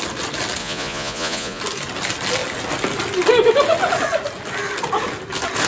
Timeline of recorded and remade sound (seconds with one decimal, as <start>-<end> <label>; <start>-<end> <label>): 0.0-0.6 recorded; 0.6-1.6 remade; 1.6-5.7 recorded